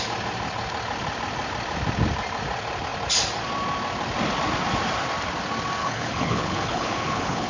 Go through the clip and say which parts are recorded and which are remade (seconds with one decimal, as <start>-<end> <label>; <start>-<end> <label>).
0.0-5.8 recorded; 5.8-7.5 remade